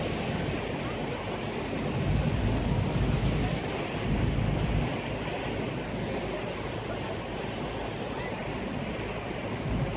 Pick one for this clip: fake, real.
real